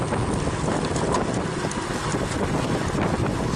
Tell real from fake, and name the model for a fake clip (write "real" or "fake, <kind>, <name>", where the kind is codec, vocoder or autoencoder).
real